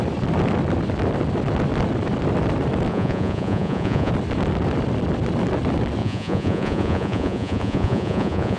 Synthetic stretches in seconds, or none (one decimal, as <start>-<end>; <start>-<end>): 2.9-4.1; 6.0-8.6